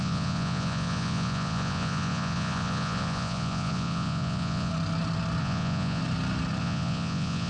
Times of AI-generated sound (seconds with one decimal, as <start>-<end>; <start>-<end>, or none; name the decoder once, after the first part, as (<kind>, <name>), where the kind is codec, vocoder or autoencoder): 0.0-4.7 (vocoder, Vocos); 5.4-6.0; 6.6-7.5